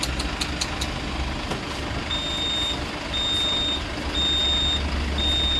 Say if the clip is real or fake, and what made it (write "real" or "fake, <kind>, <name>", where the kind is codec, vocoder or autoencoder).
real